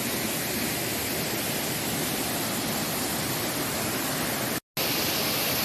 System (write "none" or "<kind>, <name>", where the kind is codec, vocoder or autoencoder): none